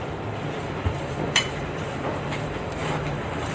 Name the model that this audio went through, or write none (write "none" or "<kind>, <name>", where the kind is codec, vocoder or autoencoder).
vocoder, BigVGAN v2